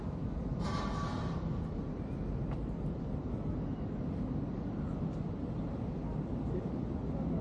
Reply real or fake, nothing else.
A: real